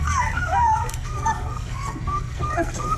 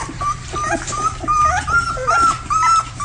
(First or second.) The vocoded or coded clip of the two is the first